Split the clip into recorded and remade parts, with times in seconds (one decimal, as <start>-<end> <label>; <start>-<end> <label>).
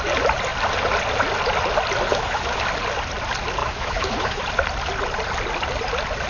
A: 0.0-2.1 recorded; 2.1-2.6 remade; 2.6-3.6 recorded; 3.6-4.4 remade; 4.4-6.3 recorded